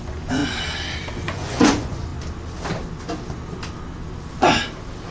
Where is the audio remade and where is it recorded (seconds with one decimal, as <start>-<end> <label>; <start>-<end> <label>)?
0.0-0.4 remade; 0.4-1.1 recorded; 1.1-2.1 remade; 2.1-5.1 recorded